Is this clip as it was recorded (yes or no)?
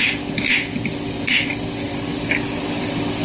yes